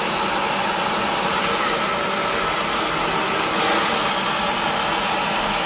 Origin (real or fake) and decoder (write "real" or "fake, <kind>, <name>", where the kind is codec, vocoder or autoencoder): real